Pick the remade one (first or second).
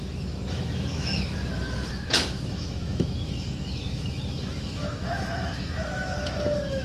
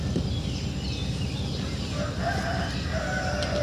first